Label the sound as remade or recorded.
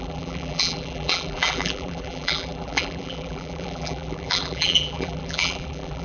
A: remade